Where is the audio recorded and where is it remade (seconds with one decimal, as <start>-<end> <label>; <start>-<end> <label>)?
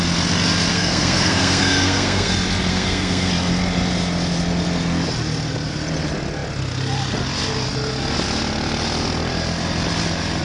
0.0-0.7 recorded; 0.7-2.3 remade; 2.3-2.7 recorded; 2.7-3.3 remade; 3.3-10.4 recorded